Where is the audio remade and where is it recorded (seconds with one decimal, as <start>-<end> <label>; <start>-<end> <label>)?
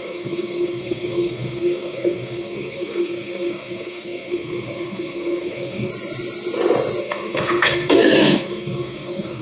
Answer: 0.0-5.9 remade; 5.9-7.0 recorded; 7.0-9.4 remade